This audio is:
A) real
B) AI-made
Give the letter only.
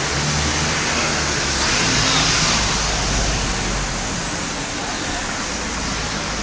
A